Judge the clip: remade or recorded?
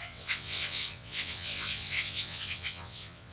remade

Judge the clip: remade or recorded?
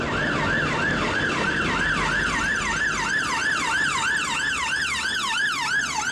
recorded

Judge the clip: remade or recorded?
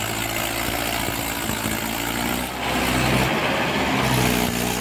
recorded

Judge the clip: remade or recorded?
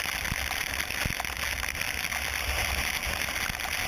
recorded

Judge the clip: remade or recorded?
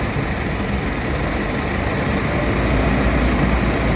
recorded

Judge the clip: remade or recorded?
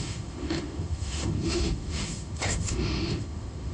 remade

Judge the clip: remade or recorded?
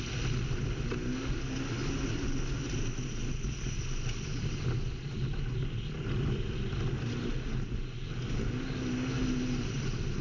recorded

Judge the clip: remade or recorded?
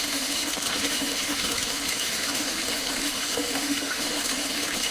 remade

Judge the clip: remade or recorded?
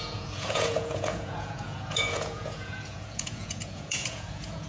remade